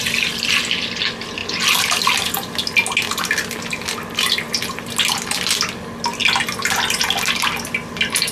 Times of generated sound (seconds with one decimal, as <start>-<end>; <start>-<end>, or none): none